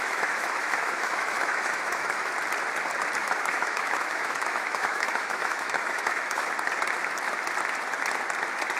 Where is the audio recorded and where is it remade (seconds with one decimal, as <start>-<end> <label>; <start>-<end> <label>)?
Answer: 0.0-2.3 remade; 2.3-3.2 recorded; 3.2-6.5 remade; 6.5-8.8 recorded